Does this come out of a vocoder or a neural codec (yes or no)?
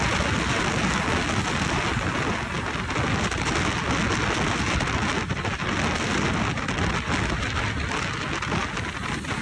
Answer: no